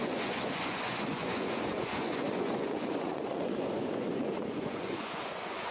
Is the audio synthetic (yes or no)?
yes